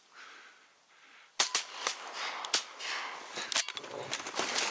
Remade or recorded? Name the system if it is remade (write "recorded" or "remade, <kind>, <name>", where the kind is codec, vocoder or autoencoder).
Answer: recorded